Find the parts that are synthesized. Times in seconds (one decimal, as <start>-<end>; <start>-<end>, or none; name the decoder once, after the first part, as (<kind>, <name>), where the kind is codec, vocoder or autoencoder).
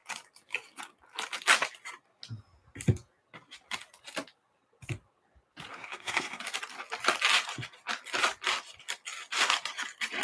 5.7-6.4 (codec, SNAC)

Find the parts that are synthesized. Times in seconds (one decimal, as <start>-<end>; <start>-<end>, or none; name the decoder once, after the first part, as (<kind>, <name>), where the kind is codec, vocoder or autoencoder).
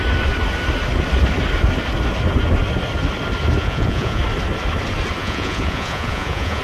3.6-4.2 (vocoder, Vocos); 5.2-6.6